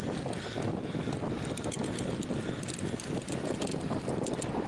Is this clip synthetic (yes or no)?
no